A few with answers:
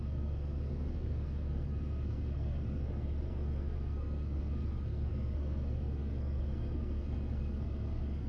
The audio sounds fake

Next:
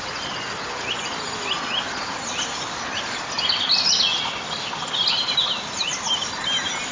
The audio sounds real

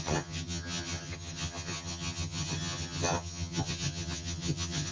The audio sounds fake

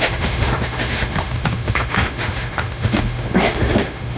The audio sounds fake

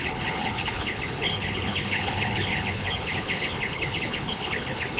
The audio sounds fake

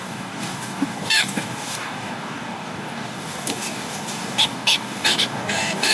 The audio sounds fake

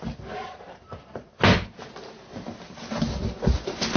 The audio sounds real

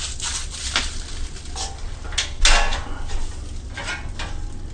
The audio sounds real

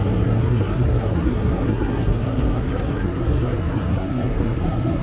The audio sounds fake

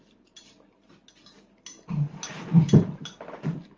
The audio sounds real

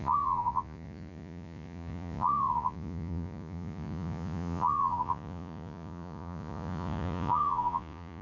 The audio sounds fake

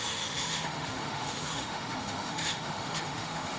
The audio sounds fake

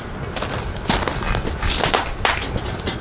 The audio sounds real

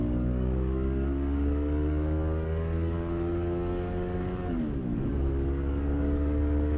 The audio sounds fake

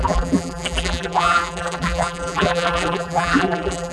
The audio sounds fake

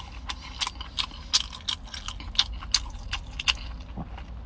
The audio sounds real